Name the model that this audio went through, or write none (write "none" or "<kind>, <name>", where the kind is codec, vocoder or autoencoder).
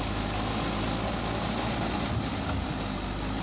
none